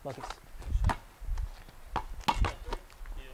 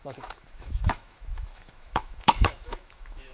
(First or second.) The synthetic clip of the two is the second